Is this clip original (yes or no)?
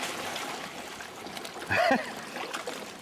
yes